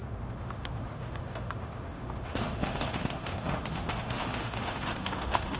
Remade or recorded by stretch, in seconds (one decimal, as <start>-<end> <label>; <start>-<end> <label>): 0.0-5.6 remade